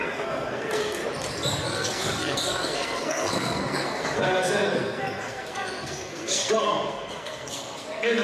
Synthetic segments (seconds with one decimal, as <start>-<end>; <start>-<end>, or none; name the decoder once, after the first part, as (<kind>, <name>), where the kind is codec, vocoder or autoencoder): 0.0-1.0 (codec, SNAC); 1.5-8.2